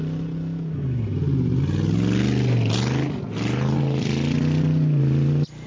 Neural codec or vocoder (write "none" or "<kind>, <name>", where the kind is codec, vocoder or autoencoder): none